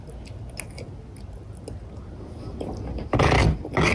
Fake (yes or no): no